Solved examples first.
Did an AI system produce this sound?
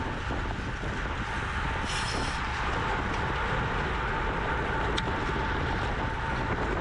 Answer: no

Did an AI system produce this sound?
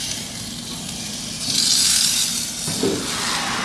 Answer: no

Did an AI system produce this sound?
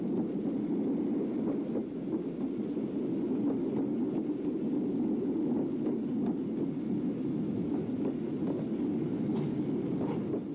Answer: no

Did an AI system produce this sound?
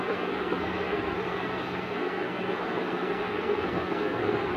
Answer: yes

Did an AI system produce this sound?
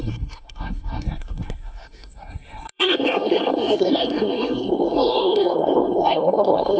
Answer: yes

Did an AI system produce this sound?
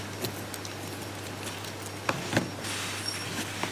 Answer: no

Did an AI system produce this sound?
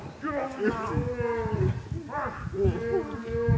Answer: no